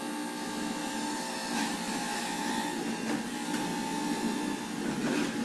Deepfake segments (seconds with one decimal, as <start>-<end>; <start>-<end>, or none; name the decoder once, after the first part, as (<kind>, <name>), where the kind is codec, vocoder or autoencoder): 0.8-1.7 (autoencoder, DAC-VAE); 2.4-3.0